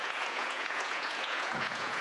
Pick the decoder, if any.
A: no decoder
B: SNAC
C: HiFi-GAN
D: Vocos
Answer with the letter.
D